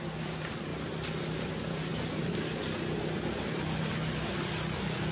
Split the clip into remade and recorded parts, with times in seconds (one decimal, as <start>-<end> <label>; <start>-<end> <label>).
0.0-5.1 recorded